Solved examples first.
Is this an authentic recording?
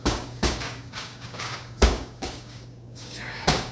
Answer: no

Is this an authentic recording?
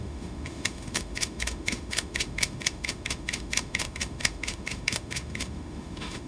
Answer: no